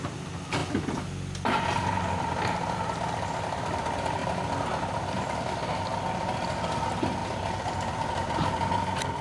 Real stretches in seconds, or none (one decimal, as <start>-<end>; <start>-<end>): 0.0-9.2